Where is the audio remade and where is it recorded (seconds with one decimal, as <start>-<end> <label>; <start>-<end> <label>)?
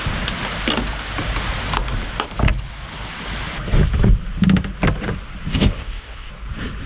0.0-5.5 recorded; 5.5-6.3 remade; 6.3-6.9 recorded